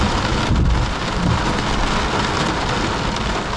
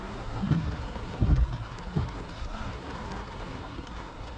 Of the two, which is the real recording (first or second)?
first